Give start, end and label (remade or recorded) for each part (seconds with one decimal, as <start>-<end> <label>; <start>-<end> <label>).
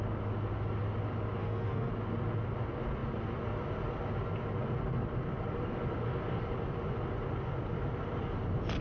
0.0-1.4 recorded; 1.4-1.9 remade; 1.9-8.8 recorded